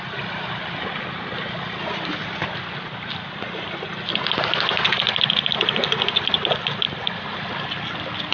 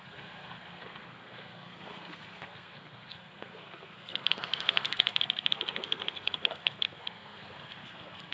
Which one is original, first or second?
first